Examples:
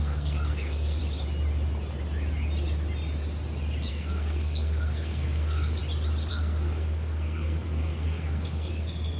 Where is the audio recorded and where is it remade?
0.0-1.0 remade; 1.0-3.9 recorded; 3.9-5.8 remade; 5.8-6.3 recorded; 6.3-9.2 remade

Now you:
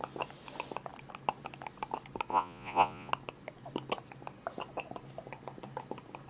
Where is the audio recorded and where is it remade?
0.0-2.3 recorded; 2.3-3.1 remade; 3.1-6.3 recorded

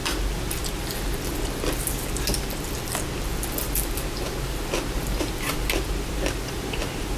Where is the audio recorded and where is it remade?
0.0-7.2 recorded

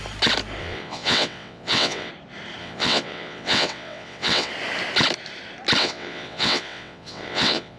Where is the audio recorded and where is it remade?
0.0-0.6 recorded; 0.6-2.1 remade; 2.1-2.6 recorded; 2.6-4.5 remade; 4.5-5.8 recorded; 5.8-7.8 remade

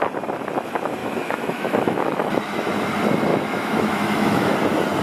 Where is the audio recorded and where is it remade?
0.0-1.0 recorded; 1.0-2.3 remade; 2.3-3.3 recorded; 3.3-4.5 remade; 4.5-5.0 recorded

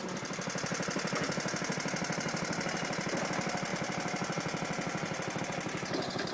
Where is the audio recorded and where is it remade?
0.0-1.7 remade; 1.7-3.7 recorded; 3.7-5.4 remade; 5.4-6.3 recorded

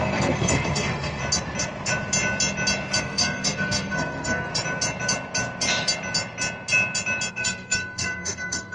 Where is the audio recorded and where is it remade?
0.0-1.2 remade; 1.2-3.0 recorded; 3.0-4.5 remade; 4.5-7.3 recorded; 7.3-8.7 remade

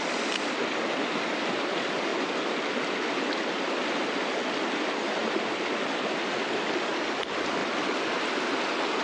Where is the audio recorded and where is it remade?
0.0-9.0 recorded